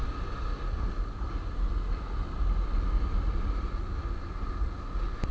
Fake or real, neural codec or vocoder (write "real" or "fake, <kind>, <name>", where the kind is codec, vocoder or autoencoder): real